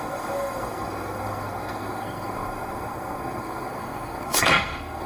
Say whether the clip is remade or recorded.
remade